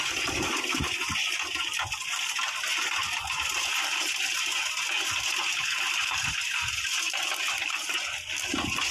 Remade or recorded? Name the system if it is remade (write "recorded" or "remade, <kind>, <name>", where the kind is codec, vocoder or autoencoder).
recorded